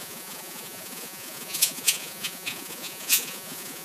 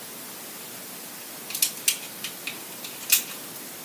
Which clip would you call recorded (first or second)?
second